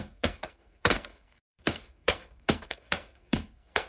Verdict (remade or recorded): remade